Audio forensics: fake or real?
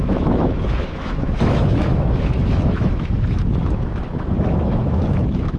fake